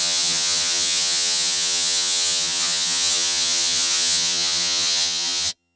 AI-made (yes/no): yes